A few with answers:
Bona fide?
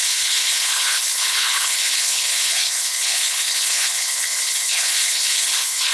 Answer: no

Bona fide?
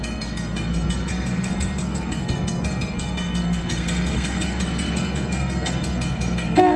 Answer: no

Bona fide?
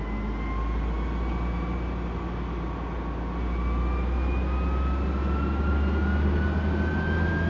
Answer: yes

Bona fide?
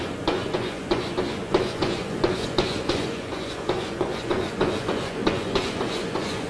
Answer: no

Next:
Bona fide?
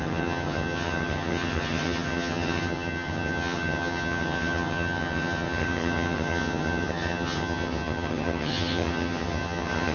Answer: no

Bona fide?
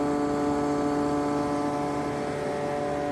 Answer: yes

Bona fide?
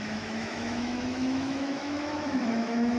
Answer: no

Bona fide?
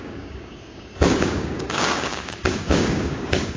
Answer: no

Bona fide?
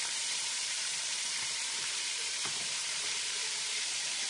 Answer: no